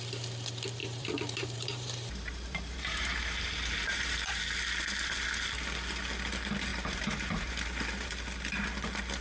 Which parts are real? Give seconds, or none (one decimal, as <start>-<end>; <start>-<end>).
0.0-0.8; 4.4-6.7; 8.1-9.2